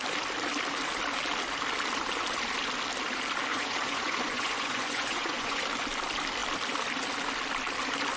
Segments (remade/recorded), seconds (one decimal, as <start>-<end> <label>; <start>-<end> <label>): 0.0-3.5 recorded; 3.5-5.6 remade; 5.6-8.2 recorded